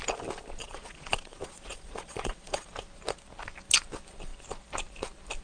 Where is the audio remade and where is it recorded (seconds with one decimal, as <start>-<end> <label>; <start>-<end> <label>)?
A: 0.0-0.6 recorded; 0.6-2.7 remade; 2.7-5.4 recorded